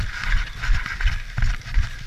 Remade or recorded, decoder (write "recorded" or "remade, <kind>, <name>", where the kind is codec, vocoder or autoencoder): recorded